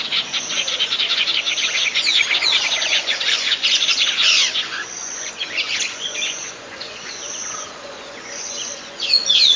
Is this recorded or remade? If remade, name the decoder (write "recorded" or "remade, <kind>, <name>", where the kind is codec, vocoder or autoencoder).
remade, vocoder, Vocos